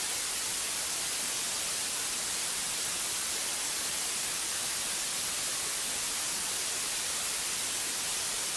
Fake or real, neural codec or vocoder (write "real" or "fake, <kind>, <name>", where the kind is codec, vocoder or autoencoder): real